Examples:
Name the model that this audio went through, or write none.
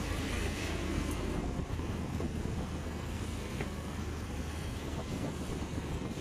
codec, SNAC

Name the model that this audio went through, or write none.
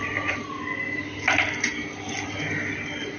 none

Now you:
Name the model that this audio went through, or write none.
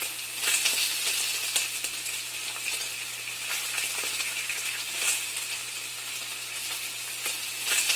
none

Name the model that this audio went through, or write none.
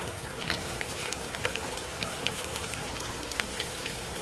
codec, SNAC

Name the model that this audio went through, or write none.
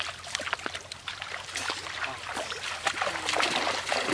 none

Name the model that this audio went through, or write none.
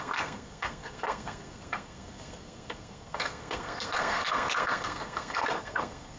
codec, SNAC